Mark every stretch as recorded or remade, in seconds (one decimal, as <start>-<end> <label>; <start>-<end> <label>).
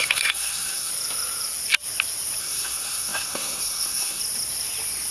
0.0-0.9 remade; 0.9-2.4 recorded; 2.4-4.2 remade; 4.2-5.1 recorded